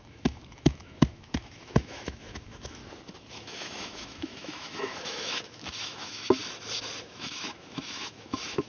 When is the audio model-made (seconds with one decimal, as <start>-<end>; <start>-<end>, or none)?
0.0-2.8; 3.3-6.4; 7.0-8.7